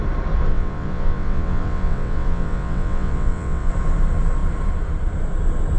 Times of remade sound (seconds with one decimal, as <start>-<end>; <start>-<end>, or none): 0.5-3.7